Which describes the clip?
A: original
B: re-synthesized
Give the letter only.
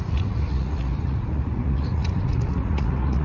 B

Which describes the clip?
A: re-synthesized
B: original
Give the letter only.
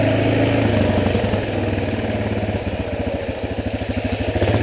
B